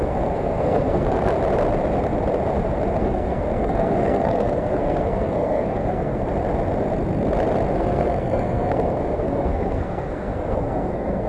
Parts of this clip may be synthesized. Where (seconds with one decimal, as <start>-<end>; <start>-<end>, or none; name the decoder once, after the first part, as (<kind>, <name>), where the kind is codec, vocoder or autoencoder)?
0.0-1.3 (codec, SNAC); 3.0-6.2; 7.7-11.3